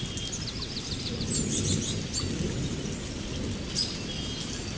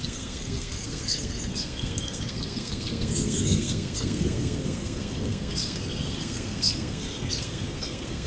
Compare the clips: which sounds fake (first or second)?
second